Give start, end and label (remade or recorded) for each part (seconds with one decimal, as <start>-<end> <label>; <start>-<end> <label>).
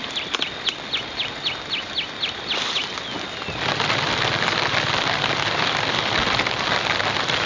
0.0-7.5 recorded